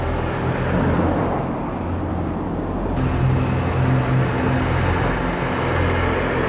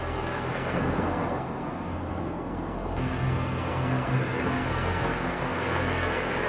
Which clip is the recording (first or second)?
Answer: first